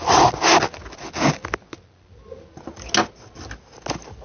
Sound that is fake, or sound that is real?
real